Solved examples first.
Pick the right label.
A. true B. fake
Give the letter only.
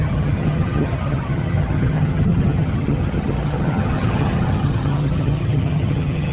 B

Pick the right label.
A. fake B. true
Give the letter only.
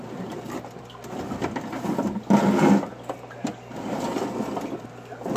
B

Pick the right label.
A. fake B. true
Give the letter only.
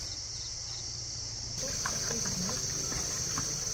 B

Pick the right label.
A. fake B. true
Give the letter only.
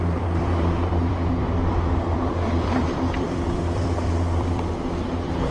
A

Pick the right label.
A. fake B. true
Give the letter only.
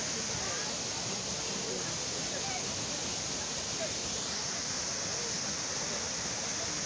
B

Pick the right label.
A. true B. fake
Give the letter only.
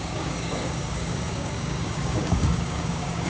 B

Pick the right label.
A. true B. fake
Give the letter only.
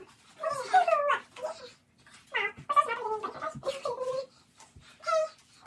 A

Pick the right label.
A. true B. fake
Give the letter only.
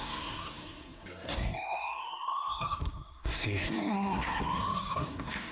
B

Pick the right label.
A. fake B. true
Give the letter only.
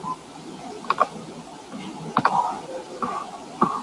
B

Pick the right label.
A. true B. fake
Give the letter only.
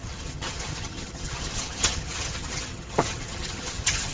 B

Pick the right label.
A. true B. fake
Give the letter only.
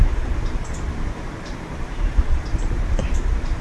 B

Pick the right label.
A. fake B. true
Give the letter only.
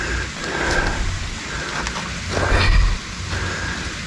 B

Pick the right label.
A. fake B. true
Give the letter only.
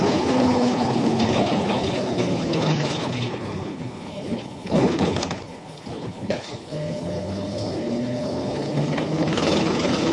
A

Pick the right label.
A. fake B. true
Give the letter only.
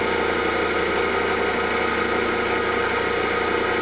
B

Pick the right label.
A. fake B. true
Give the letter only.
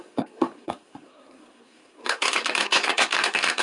A